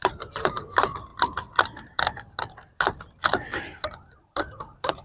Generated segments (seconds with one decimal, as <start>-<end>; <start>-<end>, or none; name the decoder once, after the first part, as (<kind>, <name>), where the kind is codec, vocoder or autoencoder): 0.0-1.1 (vocoder, BigVGAN v2); 4.1-5.0

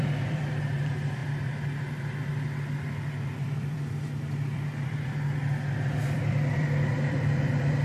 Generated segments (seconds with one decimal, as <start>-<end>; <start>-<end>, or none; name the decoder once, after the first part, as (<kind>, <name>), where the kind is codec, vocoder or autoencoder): 0.0-7.8 (vocoder, BigVGAN v2)

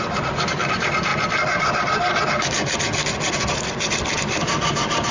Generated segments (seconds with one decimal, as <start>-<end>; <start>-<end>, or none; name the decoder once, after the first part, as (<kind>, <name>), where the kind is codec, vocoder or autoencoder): 0.0-1.1 (vocoder, BigVGAN v2); 4.2-5.1